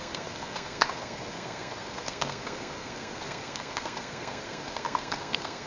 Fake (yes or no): yes